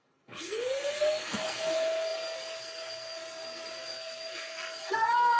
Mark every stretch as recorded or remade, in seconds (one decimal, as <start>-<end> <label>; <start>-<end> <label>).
0.0-5.4 remade